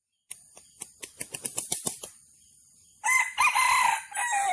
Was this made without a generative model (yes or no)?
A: yes